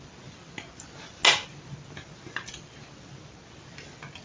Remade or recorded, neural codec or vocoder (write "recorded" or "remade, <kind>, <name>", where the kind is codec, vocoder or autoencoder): recorded